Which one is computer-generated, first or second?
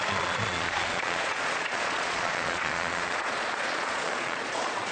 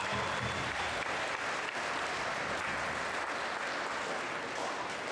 first